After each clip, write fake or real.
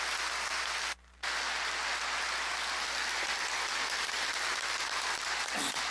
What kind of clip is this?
real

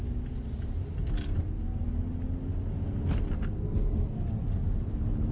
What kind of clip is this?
real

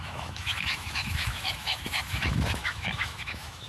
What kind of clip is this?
fake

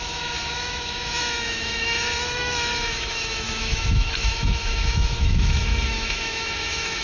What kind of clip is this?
fake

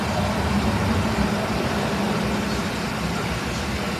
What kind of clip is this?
real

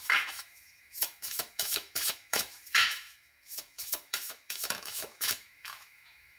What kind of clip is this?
fake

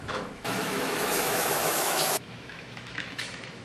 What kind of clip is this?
fake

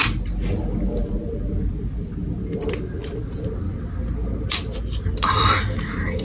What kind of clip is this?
real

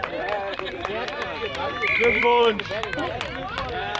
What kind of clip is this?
real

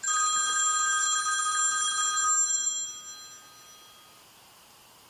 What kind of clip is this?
real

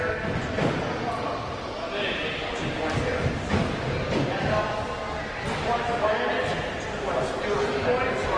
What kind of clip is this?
real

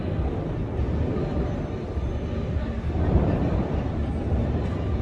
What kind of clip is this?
real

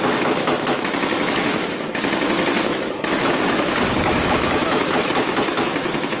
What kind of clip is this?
fake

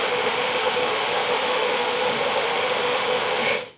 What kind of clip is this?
fake